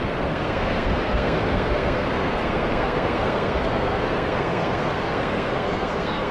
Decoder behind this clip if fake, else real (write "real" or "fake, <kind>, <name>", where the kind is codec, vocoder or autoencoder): fake, codec, SNAC